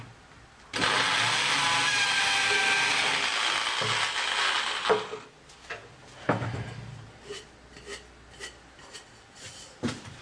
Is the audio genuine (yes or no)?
yes